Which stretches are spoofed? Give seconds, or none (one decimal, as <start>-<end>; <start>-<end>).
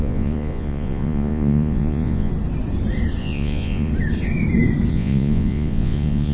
0.0-2.3; 3.2-3.9; 4.9-6.3